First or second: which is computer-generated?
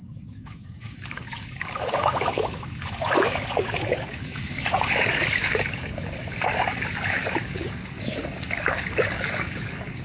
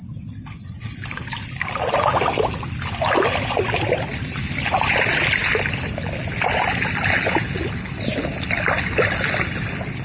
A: first